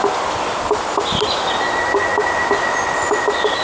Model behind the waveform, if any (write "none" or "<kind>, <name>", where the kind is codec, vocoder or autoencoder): none